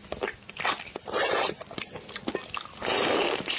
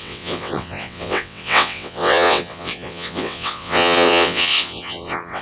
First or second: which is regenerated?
second